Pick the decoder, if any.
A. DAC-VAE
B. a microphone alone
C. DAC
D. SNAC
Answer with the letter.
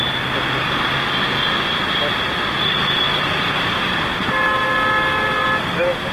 B